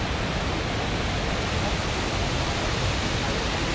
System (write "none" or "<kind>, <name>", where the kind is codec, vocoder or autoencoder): none